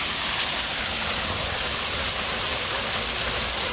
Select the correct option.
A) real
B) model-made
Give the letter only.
A